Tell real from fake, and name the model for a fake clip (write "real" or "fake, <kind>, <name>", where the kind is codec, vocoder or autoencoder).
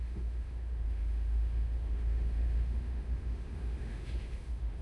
fake, autoencoder, DAC-VAE